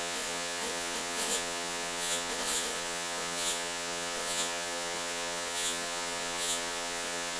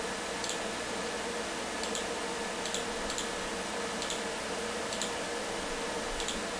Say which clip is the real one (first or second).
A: second